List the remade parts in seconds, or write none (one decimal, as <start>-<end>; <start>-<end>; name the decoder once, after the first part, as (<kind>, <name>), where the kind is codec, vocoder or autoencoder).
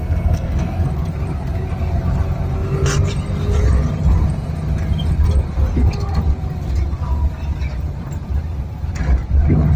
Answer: 0.0-0.9 (codec, SNAC)